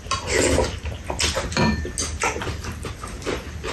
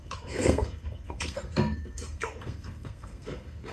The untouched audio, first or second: first